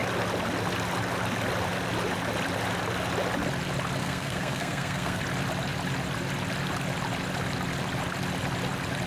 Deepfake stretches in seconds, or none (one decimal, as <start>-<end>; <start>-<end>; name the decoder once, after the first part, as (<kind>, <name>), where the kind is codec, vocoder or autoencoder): 4.0-5.2 (codec, SNAC)